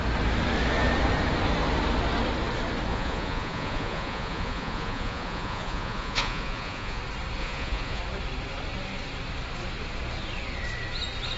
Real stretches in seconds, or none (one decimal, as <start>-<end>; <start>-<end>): 0.0-2.9; 7.0-7.4; 8.0-11.4